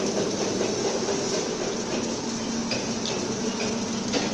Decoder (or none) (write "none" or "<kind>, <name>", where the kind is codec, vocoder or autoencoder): none